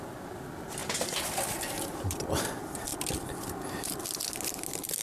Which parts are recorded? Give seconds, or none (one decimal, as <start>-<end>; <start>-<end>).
0.0-0.8; 2.4-2.9; 4.1-5.0